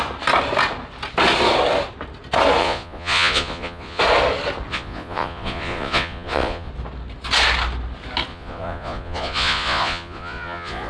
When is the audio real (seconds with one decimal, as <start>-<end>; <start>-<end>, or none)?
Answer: 0.0-2.6; 4.0-4.7; 6.7-8.3

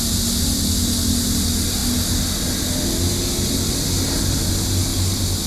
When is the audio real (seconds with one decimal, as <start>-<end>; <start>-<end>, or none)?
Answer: 0.0-5.5

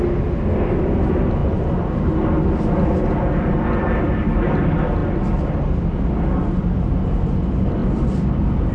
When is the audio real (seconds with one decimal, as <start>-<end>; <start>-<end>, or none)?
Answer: 0.0-8.7

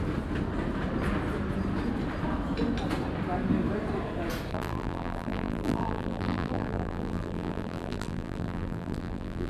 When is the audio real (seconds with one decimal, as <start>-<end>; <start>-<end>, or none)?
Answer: 0.0-4.5

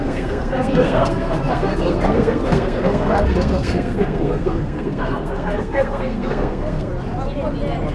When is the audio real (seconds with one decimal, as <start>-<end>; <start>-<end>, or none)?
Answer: 6.9-7.9

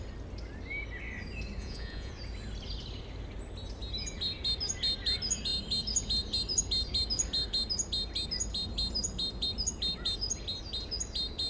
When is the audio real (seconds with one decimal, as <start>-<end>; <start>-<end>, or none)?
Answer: 0.0-1.6; 2.1-11.5

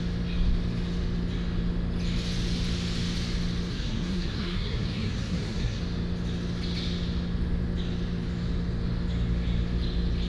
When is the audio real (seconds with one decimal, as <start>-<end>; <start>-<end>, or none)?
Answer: 0.0-3.7; 5.8-10.3

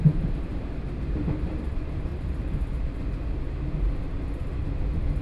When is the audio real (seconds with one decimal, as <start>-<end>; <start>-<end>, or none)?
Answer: 0.5-1.7; 2.1-3.8